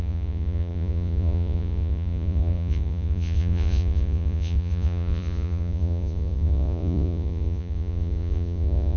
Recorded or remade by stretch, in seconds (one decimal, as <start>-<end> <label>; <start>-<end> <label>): 0.0-9.0 remade